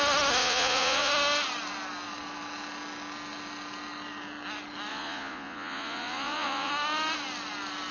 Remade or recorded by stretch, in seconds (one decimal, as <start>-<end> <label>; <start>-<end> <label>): 0.0-0.4 recorded; 0.4-1.1 remade; 1.1-4.9 recorded; 4.9-6.7 remade; 6.7-7.9 recorded